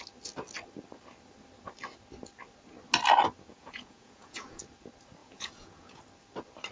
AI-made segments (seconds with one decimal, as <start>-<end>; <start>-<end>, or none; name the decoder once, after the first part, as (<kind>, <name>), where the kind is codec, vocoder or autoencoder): 3.5-4.6 (vocoder, Vocos); 5.2-6.0